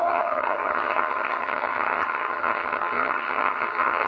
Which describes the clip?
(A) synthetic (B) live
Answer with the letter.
A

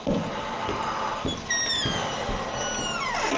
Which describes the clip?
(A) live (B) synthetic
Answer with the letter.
A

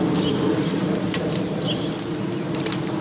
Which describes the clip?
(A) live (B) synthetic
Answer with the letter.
A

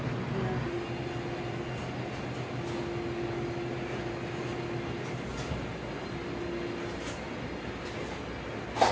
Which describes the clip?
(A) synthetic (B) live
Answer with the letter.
B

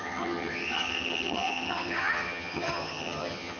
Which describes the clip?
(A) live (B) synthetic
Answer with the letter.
B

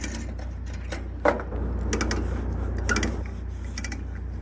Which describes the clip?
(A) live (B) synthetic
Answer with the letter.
A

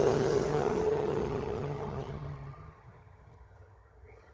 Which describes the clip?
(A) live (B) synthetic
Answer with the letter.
B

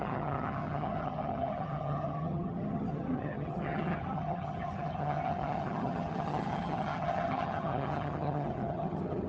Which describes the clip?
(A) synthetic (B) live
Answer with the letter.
A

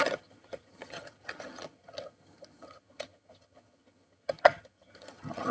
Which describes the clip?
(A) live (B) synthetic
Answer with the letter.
B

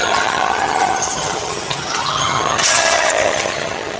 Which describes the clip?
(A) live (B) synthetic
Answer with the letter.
B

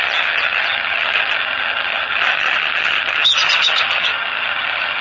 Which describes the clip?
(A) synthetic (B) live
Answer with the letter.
A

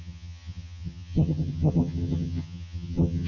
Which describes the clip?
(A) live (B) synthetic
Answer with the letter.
B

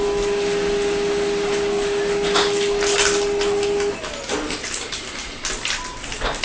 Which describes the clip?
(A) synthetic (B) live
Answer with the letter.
B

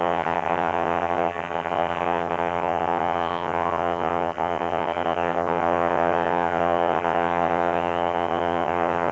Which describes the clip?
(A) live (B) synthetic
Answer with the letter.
B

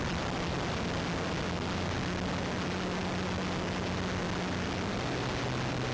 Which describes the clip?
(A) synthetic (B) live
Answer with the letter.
B